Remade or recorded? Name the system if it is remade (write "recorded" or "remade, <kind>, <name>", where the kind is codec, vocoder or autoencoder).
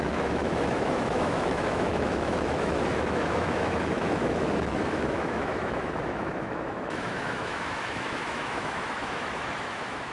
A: remade, autoencoder, DAC-VAE